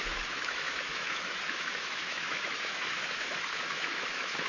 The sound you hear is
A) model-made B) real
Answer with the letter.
A